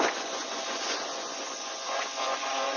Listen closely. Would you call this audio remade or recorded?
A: remade